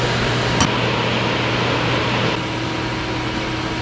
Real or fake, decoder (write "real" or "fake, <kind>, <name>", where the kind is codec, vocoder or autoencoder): real